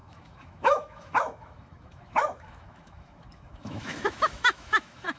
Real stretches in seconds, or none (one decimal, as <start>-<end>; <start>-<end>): none